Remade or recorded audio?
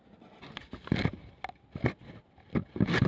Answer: recorded